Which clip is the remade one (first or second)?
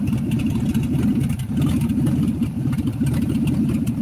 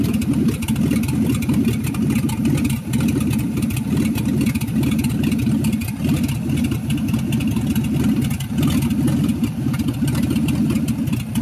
first